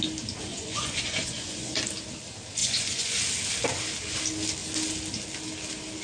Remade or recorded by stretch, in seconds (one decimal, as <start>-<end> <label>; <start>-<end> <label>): 0.0-0.5 recorded; 0.5-1.9 remade; 1.9-2.6 recorded; 2.6-3.2 remade; 3.2-6.0 recorded